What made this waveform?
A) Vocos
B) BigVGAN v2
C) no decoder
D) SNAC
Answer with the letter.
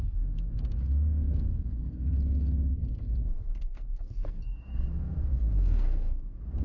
D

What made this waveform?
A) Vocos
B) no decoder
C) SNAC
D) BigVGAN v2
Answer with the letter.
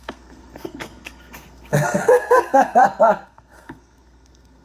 C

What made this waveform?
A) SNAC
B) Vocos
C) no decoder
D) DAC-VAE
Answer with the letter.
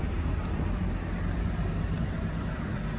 C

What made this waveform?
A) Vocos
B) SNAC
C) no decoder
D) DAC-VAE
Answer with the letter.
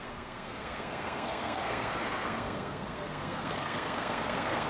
B